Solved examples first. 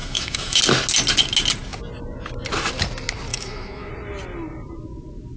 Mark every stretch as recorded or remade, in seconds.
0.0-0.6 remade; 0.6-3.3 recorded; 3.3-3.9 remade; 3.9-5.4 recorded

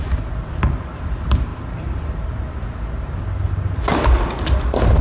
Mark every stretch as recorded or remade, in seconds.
0.0-5.0 recorded

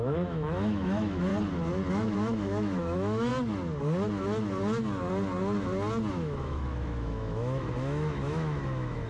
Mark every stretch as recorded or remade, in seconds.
0.0-1.3 remade; 1.3-1.9 recorded; 1.9-3.3 remade; 3.3-6.1 recorded; 6.1-9.1 remade

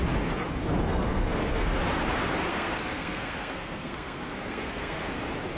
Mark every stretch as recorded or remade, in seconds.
0.0-0.9 recorded; 0.9-1.8 remade; 1.8-2.5 recorded; 2.5-5.1 remade; 5.1-5.6 recorded

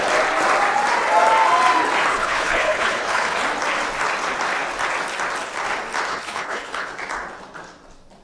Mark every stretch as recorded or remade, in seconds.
0.0-2.1 recorded; 2.1-3.4 remade; 3.4-6.1 recorded; 6.1-6.9 remade; 6.9-8.2 recorded

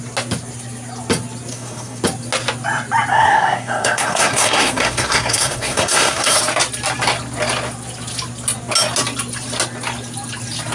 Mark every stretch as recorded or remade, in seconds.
0.0-1.5 recorded; 1.5-2.0 remade; 2.0-3.1 recorded; 3.1-6.4 remade; 6.4-10.7 recorded

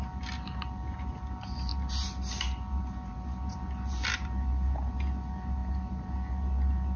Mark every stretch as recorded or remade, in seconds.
0.0-7.0 recorded

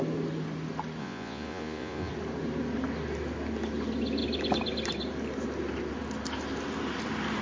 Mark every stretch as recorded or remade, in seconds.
0.0-1.0 recorded; 1.0-2.1 remade; 2.1-7.4 recorded